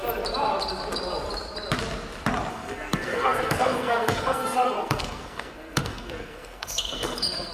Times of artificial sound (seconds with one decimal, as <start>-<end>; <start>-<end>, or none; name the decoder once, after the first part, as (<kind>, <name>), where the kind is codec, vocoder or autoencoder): 2.5-7.5 (codec, SNAC)